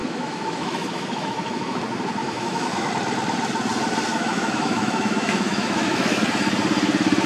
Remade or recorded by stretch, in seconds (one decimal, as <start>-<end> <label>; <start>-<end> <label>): 0.0-1.8 remade; 1.8-2.2 recorded; 2.2-2.9 remade; 2.9-4.1 recorded; 4.1-6.2 remade; 6.2-7.3 recorded